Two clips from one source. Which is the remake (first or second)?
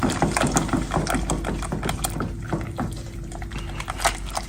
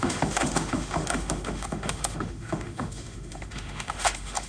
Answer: second